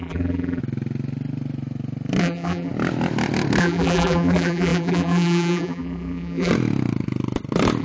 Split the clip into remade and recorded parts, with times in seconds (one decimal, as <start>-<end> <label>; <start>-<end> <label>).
0.0-0.6 remade; 0.6-2.2 recorded; 2.2-2.7 remade; 2.7-3.6 recorded; 3.6-6.5 remade; 6.5-7.8 recorded